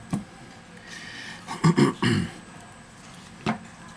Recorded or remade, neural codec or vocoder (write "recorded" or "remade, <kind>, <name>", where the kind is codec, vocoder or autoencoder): recorded